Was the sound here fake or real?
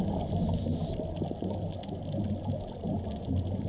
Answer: real